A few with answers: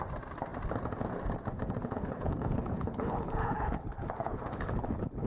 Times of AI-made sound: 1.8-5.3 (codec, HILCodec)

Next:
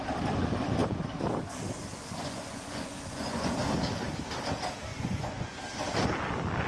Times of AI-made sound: 1.9-3.5 (vocoder, Vocos); 4.9-5.6